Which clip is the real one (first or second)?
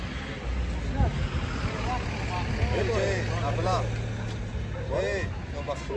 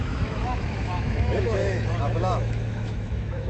first